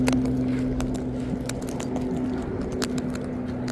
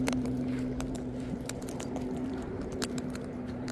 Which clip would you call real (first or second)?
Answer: first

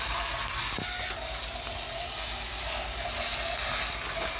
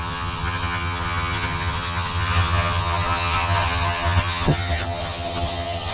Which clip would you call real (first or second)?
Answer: first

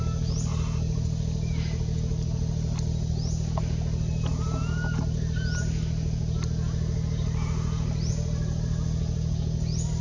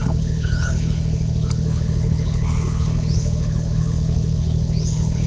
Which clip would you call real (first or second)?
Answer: first